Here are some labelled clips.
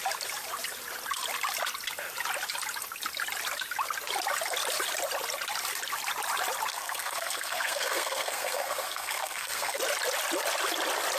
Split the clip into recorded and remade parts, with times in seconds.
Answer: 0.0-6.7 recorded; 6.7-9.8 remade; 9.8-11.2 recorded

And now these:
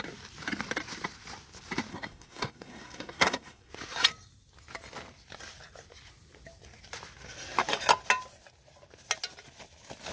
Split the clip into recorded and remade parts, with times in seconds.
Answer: 0.0-1.9 recorded; 1.9-3.7 remade; 3.7-10.1 recorded